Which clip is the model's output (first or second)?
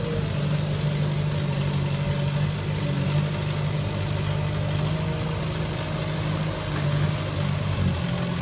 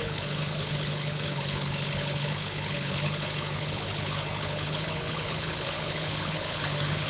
second